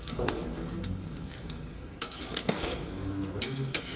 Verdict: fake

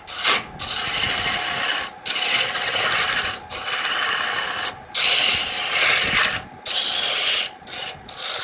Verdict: real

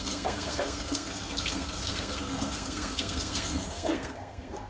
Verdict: fake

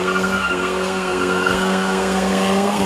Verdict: fake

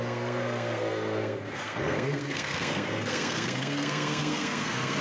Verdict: fake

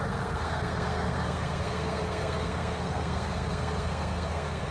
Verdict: fake